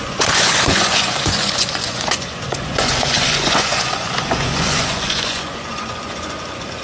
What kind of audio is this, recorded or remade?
remade